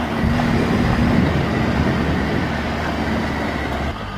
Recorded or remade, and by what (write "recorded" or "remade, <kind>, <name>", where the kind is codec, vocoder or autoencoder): recorded